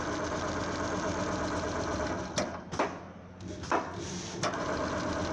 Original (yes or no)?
yes